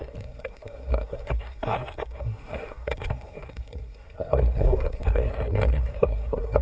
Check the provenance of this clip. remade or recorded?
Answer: remade